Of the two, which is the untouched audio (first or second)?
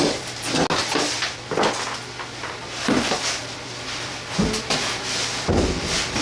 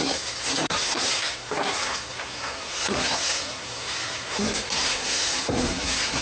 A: first